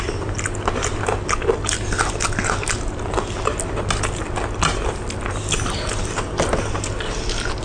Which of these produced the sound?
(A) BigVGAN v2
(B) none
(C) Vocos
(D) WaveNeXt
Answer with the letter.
B